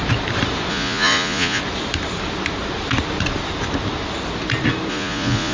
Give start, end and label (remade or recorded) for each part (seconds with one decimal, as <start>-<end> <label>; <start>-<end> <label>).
0.0-0.7 recorded; 0.7-1.6 remade; 1.6-4.9 recorded; 4.9-5.5 remade